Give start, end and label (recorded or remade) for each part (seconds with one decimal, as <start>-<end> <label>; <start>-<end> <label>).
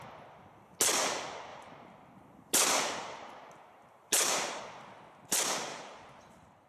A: 0.0-1.5 recorded; 1.5-4.6 remade; 4.6-5.7 recorded; 5.7-6.7 remade